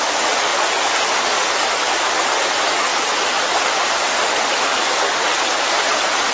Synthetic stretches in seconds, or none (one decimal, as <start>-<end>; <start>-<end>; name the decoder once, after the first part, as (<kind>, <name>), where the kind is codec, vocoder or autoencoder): none